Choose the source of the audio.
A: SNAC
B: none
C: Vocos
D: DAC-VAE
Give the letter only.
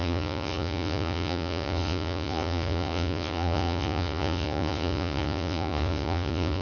C